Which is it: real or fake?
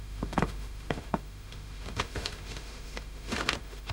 fake